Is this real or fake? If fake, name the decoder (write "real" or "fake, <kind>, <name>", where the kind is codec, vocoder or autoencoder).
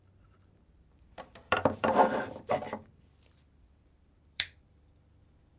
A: fake, vocoder, BigVGAN v2